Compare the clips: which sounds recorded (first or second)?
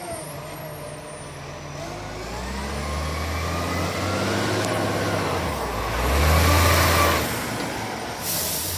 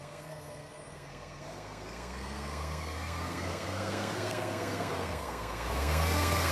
first